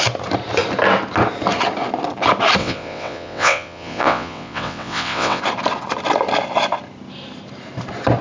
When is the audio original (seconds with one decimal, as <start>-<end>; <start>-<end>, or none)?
0.0-2.6; 5.4-8.2